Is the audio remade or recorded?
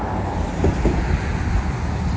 recorded